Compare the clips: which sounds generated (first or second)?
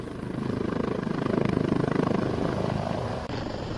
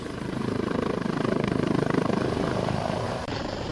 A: second